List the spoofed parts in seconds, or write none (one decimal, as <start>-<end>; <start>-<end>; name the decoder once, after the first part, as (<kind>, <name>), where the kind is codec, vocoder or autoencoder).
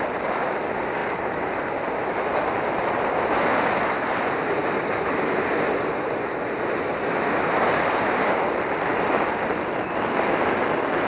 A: none